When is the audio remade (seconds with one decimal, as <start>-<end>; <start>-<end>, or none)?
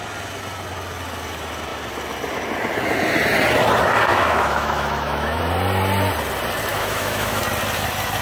4.1-5.4; 6.7-7.4